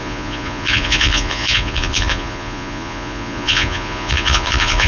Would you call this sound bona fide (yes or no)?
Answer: no